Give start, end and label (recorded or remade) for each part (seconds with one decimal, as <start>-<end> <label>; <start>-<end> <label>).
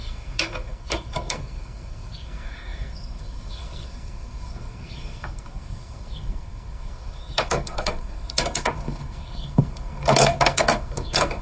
0.0-11.4 remade